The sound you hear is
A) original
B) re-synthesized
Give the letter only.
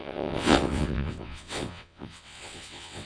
B